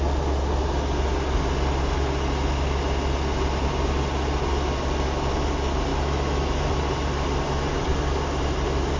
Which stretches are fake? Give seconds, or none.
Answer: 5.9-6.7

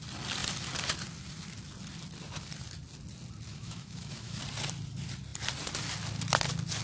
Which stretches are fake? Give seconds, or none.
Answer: 3.5-4.4

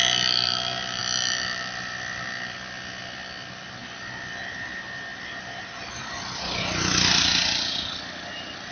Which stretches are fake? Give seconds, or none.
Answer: none